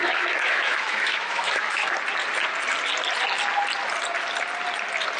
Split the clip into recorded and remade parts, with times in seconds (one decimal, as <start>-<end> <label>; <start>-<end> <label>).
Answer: 0.0-1.9 remade; 1.9-5.2 recorded